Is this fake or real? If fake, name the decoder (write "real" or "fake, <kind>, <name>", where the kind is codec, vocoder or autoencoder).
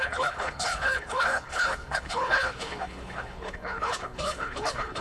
fake, codec, HILCodec